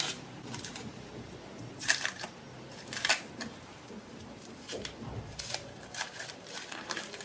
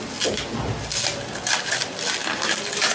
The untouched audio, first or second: second